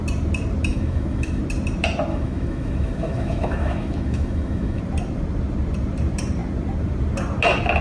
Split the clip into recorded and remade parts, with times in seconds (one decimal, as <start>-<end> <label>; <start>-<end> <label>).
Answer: 0.0-0.7 recorded; 0.7-1.4 remade; 1.4-2.1 recorded; 2.1-4.8 remade; 4.8-7.8 recorded